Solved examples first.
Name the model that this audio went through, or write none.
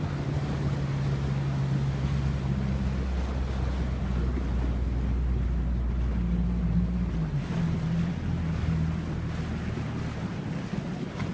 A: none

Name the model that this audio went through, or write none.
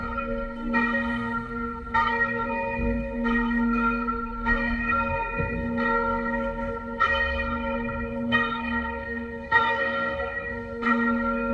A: codec, SNAC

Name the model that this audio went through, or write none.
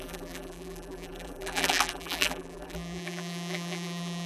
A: vocoder, BigVGAN v2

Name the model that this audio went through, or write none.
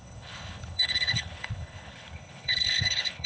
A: codec, HILCodec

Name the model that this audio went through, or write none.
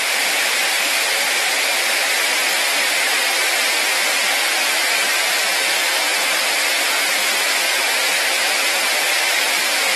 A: vocoder, BigVGAN v2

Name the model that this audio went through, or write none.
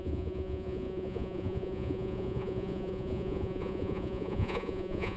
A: vocoder, Vocos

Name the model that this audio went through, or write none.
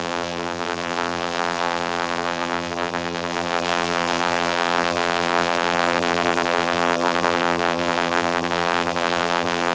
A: vocoder, BigVGAN v2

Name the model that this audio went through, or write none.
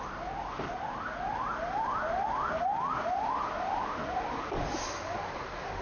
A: none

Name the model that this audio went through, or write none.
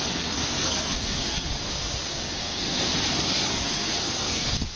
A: codec, SNAC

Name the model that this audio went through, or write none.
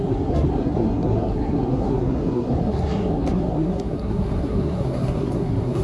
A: codec, SNAC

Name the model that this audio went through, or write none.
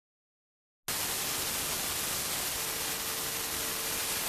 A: none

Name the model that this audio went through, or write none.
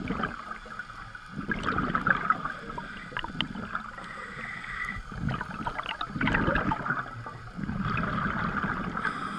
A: none